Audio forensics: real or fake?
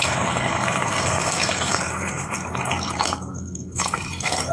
fake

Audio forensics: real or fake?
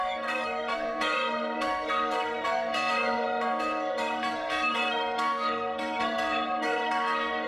fake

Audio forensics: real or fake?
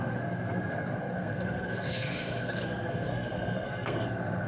fake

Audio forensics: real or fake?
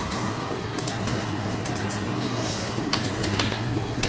fake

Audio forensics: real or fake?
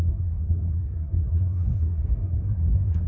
fake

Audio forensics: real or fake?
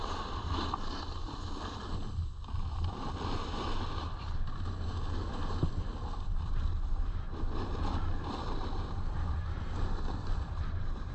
real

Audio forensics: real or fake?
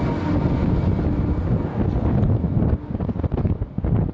real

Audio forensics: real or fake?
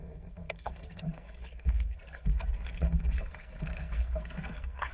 fake